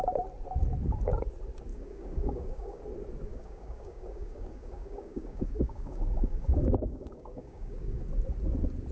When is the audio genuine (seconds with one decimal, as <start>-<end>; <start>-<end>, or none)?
0.0-1.7; 2.8-3.3; 8.0-8.9